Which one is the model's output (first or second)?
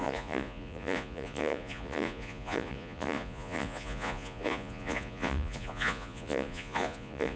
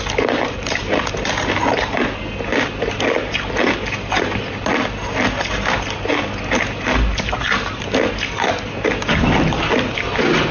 first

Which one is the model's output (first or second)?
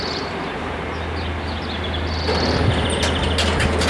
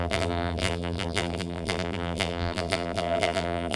second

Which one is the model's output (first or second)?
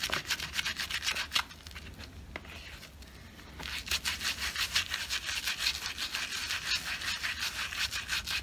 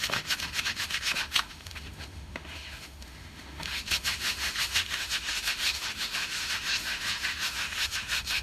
second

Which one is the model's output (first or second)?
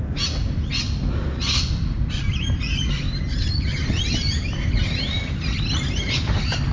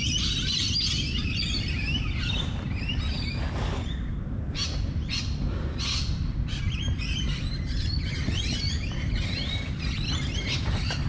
second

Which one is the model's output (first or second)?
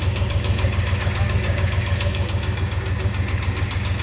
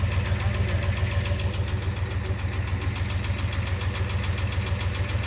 first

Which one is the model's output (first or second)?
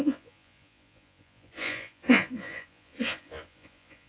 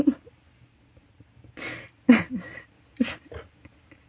first